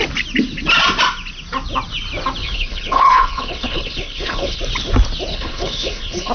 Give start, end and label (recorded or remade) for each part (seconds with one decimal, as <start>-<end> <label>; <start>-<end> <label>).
0.0-2.4 recorded; 2.4-4.6 remade; 4.6-5.3 recorded; 5.3-6.3 remade